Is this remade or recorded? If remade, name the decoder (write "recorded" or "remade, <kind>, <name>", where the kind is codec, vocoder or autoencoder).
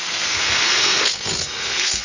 remade, codec, SNAC